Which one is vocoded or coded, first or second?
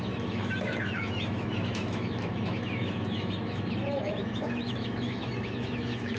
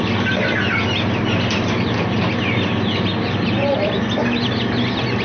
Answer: first